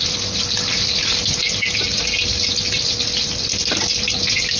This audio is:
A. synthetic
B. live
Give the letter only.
B